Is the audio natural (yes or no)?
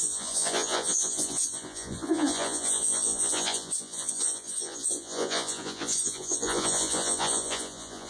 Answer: no